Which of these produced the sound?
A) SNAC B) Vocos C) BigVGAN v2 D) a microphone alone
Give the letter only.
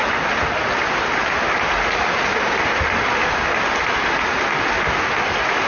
D